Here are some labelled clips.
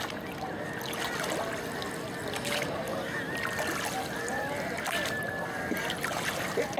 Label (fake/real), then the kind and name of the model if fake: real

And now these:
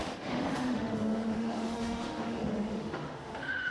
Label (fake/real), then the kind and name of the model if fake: fake, autoencoder, DAC-VAE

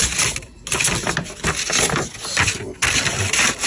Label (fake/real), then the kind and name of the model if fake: real